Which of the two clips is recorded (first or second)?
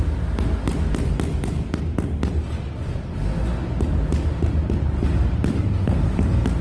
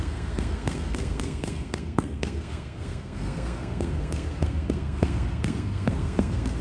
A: first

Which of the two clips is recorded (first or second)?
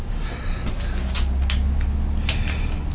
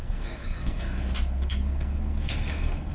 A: first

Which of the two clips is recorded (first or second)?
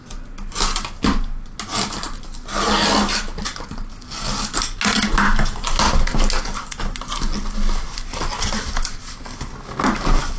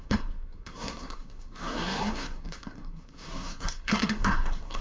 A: first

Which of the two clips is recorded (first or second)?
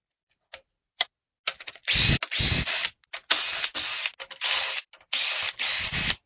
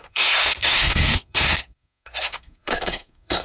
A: first